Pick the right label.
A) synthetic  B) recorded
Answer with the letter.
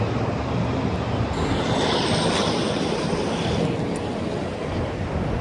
B